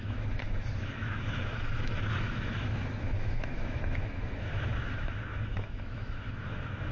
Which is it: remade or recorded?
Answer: remade